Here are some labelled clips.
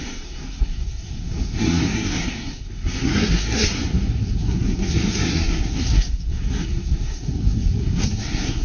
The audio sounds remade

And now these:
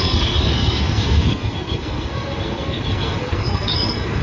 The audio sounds remade